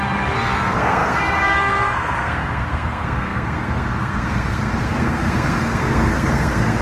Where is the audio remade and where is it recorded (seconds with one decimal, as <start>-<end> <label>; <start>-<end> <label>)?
0.0-6.8 remade

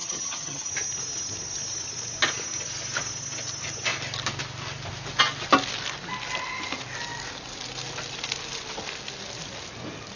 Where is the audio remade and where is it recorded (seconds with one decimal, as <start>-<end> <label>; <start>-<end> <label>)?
0.0-0.7 remade; 0.7-10.2 recorded

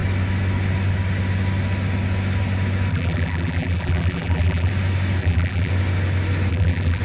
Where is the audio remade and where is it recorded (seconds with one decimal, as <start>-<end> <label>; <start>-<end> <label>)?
0.0-2.9 recorded; 2.9-4.7 remade; 4.7-5.2 recorded; 5.2-5.7 remade; 5.7-6.5 recorded; 6.5-7.0 remade

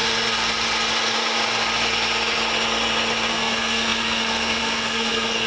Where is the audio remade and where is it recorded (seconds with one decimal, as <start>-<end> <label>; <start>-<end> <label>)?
0.0-3.3 recorded; 3.3-5.5 remade